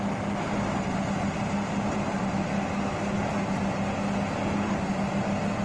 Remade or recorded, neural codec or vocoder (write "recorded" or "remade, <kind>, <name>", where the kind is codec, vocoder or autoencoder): recorded